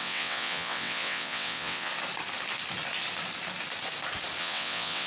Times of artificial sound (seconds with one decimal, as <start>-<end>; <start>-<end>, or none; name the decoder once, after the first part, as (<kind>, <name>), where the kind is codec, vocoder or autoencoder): 0.0-1.9 (vocoder, WaveNeXt); 4.4-5.1